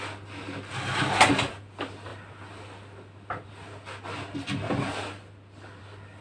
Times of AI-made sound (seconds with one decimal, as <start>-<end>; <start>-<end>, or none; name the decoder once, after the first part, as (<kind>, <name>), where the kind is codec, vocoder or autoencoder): none